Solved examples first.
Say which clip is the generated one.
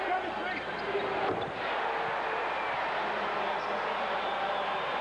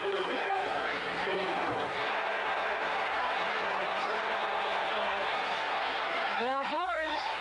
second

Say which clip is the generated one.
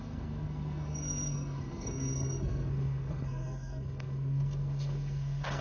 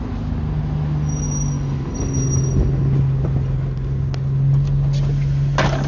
first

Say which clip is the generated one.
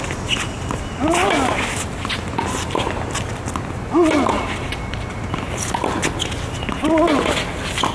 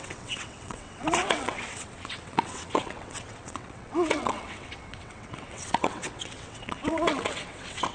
second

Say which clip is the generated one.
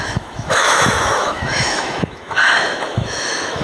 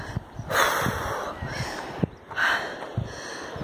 first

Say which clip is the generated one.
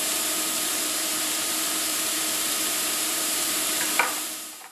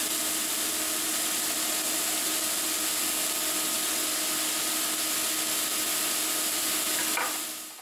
first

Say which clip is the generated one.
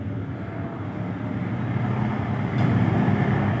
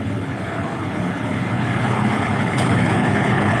second